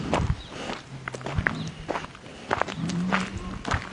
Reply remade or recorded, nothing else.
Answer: recorded